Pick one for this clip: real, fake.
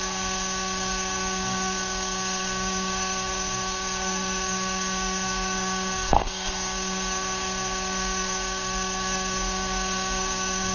fake